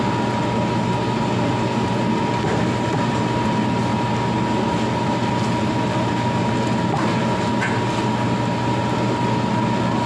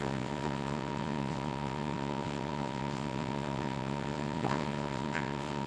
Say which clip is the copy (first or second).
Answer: second